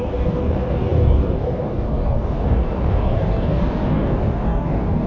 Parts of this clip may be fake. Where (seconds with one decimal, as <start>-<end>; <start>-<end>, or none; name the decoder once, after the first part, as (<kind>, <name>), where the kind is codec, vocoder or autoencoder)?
0.0-5.1 (codec, DAC)